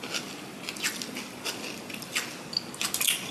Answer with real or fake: real